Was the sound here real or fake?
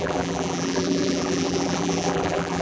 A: fake